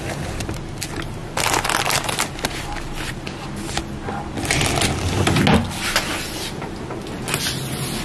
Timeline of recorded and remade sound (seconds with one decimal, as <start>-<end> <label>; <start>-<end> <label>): 0.0-8.0 recorded

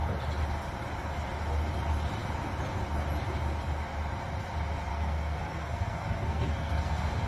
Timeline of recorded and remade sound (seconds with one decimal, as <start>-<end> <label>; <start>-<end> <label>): 0.0-4.9 recorded; 4.9-7.3 remade

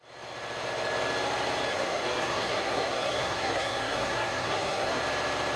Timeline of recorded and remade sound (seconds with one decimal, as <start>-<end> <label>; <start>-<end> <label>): 0.0-1.7 recorded; 1.7-5.0 remade; 5.0-5.6 recorded

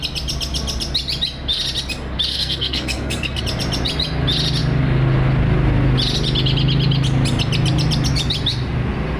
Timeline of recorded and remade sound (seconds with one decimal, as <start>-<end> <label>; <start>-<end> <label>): 0.0-2.3 recorded; 2.3-3.4 remade; 3.4-9.2 recorded

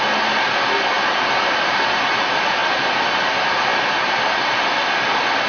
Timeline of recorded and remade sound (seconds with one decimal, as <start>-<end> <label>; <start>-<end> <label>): 0.0-5.5 recorded

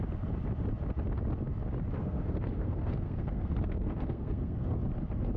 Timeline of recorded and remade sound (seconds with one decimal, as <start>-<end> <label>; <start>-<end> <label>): 0.0-2.0 recorded; 2.0-4.8 remade; 4.8-5.4 recorded

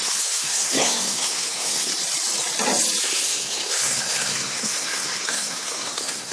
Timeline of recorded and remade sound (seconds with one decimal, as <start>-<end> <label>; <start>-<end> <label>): 0.0-1.9 remade; 1.9-3.0 recorded; 3.0-6.3 remade